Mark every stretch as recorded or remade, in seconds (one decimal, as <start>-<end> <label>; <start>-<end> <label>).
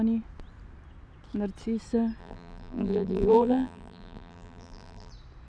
0.0-2.2 recorded; 2.2-5.1 remade; 5.1-5.5 recorded